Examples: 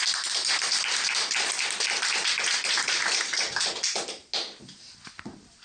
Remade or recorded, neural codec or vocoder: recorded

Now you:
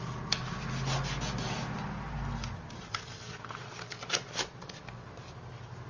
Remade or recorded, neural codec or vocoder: recorded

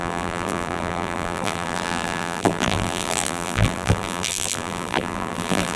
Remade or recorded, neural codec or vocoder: remade, vocoder, BigVGAN v2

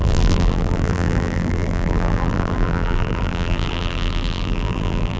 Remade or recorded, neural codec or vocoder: remade, vocoder, BigVGAN v2